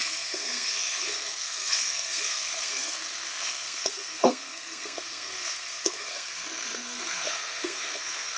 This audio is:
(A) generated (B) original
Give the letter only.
A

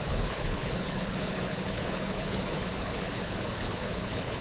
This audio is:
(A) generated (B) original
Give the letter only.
A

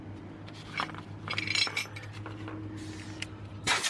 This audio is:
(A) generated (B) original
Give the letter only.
B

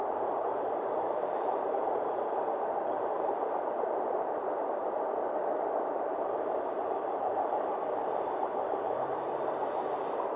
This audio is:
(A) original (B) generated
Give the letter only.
B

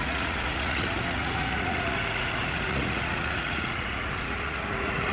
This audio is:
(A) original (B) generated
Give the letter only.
B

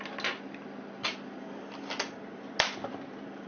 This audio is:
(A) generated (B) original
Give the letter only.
B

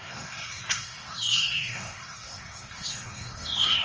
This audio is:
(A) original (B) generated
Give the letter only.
B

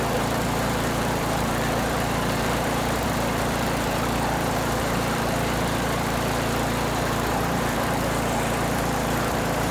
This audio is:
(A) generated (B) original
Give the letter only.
A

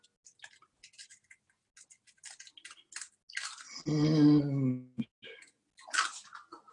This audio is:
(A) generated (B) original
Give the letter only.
B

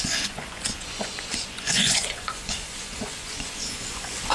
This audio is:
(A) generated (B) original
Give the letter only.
A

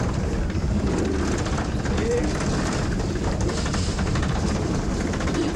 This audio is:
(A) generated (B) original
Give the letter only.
A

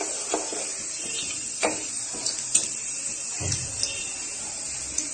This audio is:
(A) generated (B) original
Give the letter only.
B